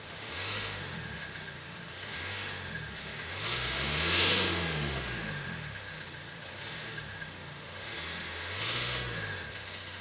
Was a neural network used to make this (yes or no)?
yes